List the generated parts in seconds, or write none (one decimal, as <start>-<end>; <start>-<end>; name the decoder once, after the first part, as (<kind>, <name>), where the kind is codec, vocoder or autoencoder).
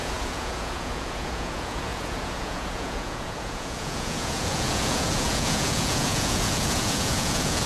0.0-7.7 (vocoder, Vocos)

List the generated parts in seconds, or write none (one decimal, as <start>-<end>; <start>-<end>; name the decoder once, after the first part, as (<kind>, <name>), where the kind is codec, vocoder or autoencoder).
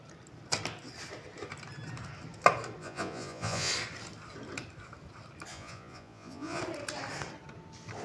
2.8-3.7 (vocoder, Vocos); 5.5-6.6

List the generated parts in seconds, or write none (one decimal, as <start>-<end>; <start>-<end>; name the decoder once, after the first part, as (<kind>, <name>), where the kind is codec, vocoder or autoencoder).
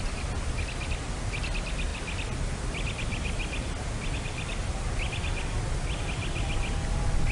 none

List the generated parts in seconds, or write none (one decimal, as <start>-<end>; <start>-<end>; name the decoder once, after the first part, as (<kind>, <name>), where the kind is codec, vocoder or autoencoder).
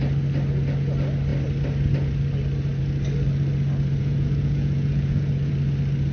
4.0-5.5 (vocoder, Vocos)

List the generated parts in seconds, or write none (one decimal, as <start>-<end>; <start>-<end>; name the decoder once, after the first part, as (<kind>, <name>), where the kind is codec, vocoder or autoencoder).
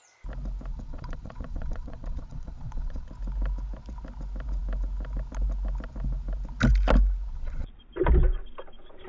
0.7-3.1 (vocoder, Vocos); 7.3-7.8